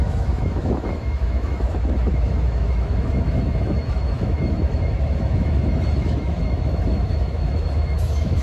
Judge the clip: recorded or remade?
remade